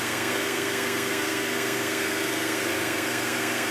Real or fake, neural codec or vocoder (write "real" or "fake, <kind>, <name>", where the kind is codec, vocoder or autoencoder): fake, codec, SNAC